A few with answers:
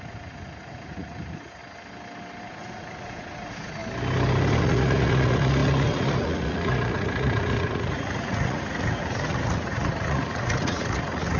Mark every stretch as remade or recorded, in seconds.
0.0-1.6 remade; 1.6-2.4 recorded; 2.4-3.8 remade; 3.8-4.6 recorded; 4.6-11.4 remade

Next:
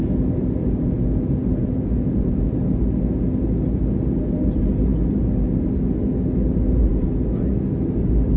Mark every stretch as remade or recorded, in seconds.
0.0-0.6 recorded; 0.6-2.5 remade; 2.5-8.4 recorded

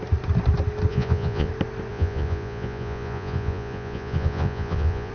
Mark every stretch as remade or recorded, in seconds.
0.0-0.9 recorded; 0.9-1.5 remade; 1.5-1.9 recorded; 1.9-5.1 remade